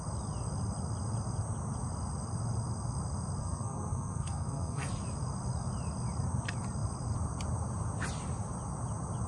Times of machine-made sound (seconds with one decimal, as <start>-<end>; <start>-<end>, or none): 3.4-4.9